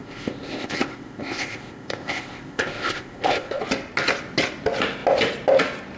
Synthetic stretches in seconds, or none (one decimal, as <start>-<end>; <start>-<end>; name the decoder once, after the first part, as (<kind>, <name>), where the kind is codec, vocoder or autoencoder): 0.0-3.6 (codec, ZipCodec)